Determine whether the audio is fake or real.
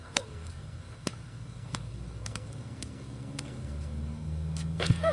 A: fake